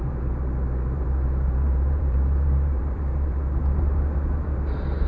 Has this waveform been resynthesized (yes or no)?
yes